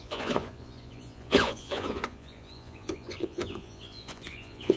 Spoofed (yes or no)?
yes